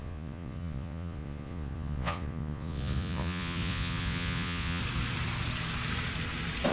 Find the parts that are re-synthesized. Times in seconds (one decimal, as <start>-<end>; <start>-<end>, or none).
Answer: 0.0-4.8

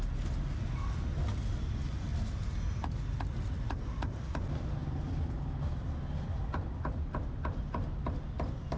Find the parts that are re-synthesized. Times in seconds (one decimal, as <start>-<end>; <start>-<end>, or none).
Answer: none

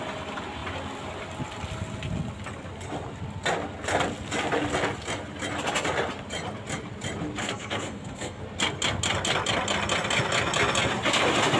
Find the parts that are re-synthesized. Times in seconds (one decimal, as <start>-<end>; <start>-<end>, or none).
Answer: 7.4-8.4

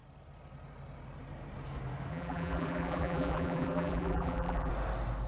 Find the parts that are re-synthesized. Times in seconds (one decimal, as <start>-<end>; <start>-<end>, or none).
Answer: 2.1-4.7

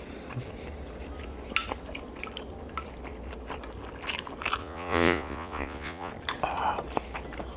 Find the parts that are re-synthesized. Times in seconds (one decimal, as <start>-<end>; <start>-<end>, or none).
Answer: 4.6-6.1

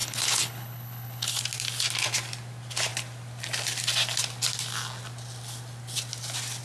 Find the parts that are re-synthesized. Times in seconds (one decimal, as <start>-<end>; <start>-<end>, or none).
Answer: 0.0-1.4

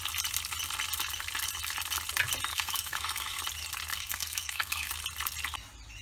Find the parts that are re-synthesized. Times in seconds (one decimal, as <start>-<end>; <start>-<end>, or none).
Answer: 2.5-3.4; 3.9-4.9